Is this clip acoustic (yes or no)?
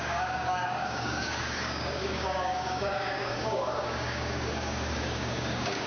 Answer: no